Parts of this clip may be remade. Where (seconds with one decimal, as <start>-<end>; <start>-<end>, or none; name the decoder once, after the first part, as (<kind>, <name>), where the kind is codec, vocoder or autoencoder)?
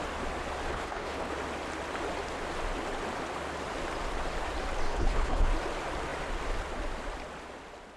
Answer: 0.7-1.3 (codec, HILCodec); 4.9-5.5